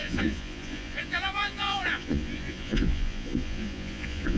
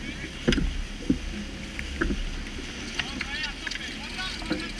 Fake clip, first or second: first